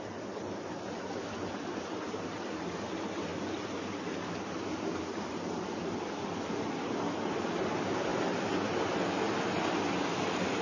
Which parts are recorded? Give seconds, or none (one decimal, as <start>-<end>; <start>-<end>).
0.0-10.6